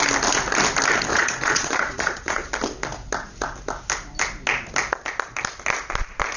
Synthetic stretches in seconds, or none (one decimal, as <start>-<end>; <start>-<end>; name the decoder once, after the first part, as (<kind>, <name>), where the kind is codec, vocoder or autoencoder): 1.1-2.5 (vocoder, Vocos)